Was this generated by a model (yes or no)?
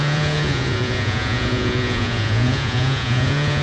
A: yes